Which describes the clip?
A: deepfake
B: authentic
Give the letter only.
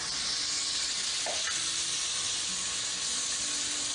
B